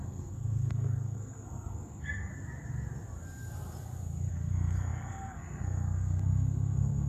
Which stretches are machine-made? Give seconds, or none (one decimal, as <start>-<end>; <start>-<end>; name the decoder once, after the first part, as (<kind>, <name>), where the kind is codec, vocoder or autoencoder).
0.0-2.3 (codec, SNAC); 4.3-7.1